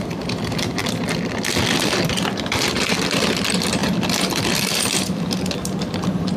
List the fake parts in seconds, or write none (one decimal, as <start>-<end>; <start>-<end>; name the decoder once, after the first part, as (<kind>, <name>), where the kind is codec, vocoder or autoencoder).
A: 0.0-0.8 (vocoder, BigVGAN v2); 1.8-3.8; 4.5-6.4